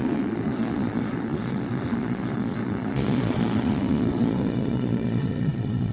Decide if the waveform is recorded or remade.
remade